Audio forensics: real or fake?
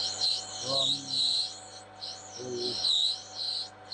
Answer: real